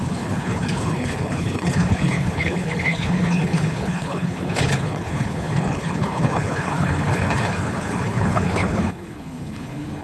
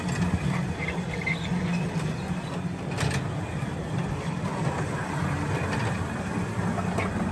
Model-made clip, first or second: first